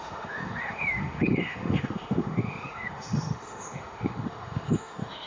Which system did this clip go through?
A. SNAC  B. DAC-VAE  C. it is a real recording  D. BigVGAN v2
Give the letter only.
B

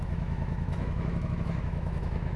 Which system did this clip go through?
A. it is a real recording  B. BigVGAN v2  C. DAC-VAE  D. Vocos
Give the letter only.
C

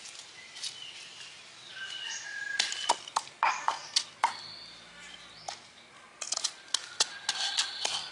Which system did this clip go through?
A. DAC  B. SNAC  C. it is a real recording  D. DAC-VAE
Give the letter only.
C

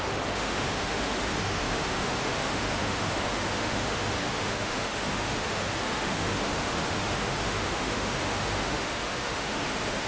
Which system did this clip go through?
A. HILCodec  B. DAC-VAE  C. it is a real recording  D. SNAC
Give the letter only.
B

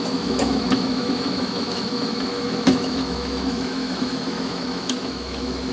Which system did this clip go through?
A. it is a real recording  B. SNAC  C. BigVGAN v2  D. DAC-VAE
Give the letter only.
D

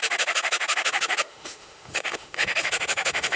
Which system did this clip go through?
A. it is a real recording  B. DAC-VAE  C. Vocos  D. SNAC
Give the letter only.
B